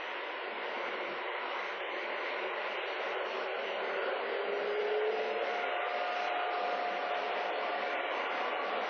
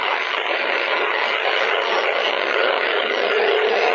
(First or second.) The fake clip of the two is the second